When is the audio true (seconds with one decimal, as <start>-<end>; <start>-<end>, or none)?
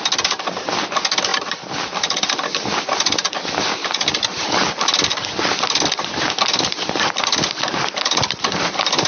0.0-9.1